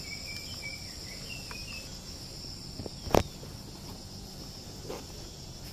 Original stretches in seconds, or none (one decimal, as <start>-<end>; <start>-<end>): 0.0-5.7